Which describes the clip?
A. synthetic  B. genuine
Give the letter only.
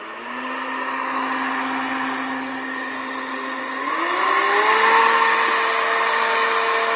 B